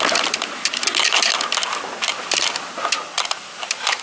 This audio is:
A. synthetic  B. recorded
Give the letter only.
B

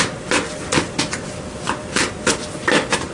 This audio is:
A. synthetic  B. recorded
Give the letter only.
B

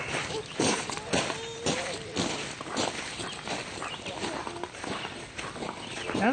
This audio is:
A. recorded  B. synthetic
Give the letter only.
A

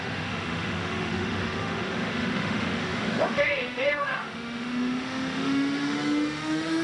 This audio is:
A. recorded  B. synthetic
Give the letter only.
B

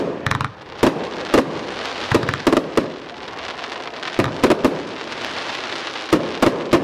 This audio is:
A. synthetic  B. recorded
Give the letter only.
B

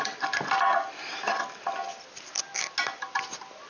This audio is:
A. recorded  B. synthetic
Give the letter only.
A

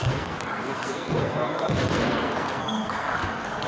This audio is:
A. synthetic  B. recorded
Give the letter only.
A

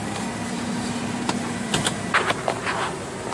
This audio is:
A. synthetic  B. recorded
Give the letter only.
B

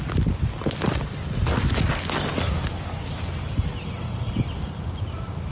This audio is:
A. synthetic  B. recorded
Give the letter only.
B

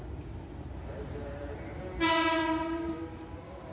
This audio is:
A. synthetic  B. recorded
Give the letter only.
B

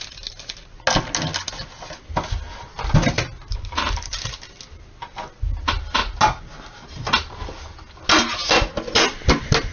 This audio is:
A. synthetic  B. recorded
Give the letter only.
B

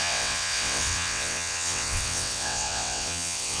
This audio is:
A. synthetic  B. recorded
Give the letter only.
A